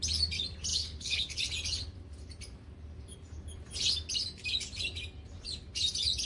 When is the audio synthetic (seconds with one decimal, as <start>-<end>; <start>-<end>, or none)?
0.7-1.4